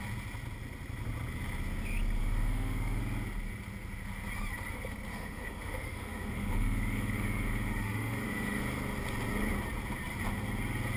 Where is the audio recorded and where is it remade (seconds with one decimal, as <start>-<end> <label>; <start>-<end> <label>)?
0.0-2.2 recorded; 2.2-3.0 remade; 3.0-5.1 recorded; 5.1-8.6 remade; 8.6-11.0 recorded